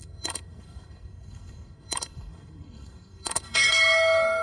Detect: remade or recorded remade